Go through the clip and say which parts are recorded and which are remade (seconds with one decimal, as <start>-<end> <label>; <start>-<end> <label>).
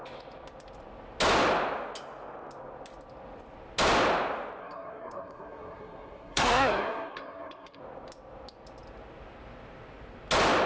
0.0-4.6 recorded; 4.6-7.8 remade; 7.8-10.7 recorded